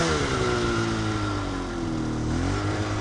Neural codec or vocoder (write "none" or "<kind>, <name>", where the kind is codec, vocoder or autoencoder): none